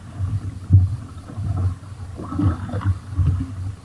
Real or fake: real